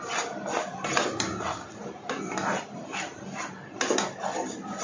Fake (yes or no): no